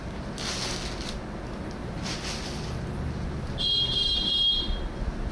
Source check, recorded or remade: recorded